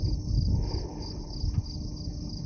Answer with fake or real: real